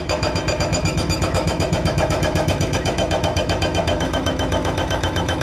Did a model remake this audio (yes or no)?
yes